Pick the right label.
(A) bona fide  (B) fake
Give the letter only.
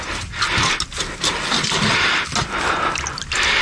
A